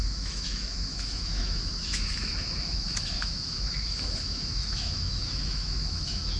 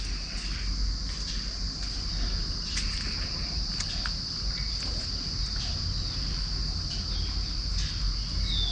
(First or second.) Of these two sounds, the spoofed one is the first